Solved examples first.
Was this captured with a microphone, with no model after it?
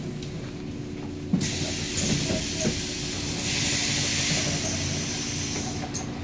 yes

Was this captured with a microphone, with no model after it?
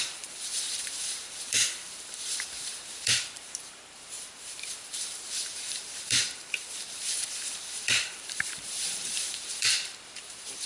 no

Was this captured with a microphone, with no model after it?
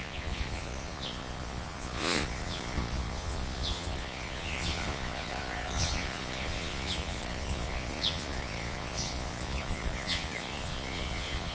no